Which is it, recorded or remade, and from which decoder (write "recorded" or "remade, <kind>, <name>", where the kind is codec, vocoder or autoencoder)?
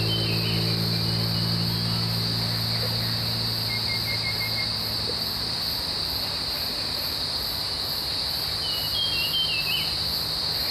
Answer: recorded